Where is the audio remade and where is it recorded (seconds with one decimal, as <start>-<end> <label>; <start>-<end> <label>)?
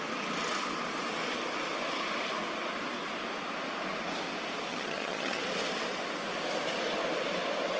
0.0-4.7 recorded; 4.7-5.4 remade; 5.4-7.8 recorded